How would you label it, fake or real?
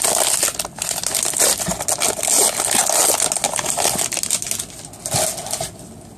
real